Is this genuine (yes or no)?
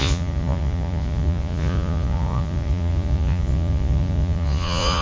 no